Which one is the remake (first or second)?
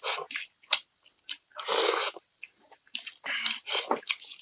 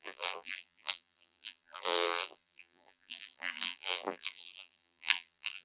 second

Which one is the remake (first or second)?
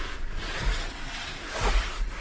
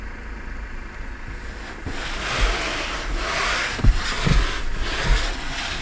first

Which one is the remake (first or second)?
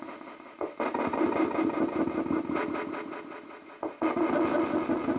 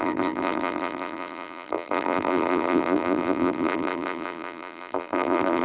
second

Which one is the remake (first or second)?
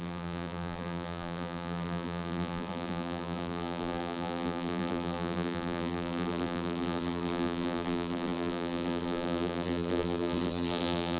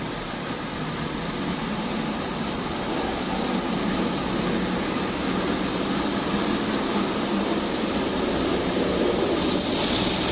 first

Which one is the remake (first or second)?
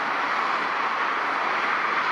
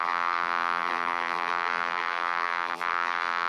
second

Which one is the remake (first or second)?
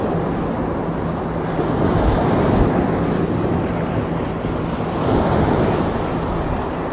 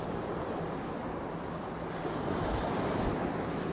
second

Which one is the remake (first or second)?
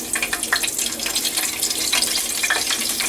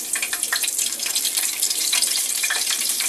second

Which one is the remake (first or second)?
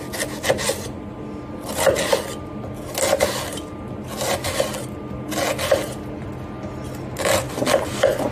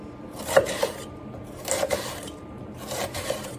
second